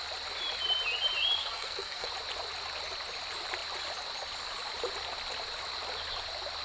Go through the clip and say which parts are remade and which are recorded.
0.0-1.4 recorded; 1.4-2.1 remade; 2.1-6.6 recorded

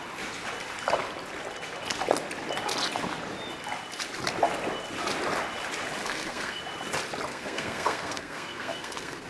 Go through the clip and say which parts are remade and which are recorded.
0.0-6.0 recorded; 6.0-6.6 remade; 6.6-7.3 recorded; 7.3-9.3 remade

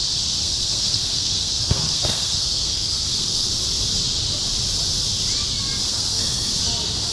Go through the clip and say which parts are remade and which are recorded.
0.0-0.4 recorded; 0.4-3.5 remade; 3.5-5.8 recorded; 5.8-6.5 remade; 6.5-7.1 recorded

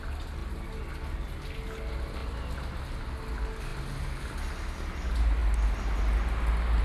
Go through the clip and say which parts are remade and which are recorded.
0.0-6.8 recorded

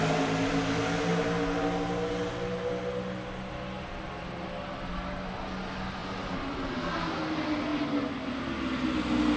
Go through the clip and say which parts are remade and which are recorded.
0.0-9.4 recorded